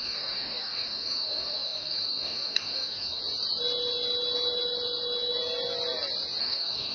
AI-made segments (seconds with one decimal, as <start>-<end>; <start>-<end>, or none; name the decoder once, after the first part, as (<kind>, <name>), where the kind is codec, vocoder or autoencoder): 0.0-3.2 (codec, DAC); 6.4-6.9